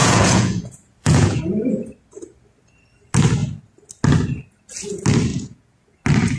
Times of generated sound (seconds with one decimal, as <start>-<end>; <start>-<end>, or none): 0.0-1.4; 5.3-6.0